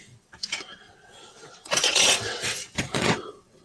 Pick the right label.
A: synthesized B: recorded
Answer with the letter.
A